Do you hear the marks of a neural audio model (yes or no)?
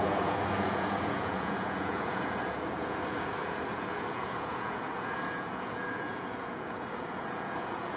yes